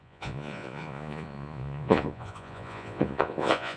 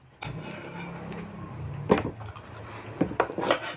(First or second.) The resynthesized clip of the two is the first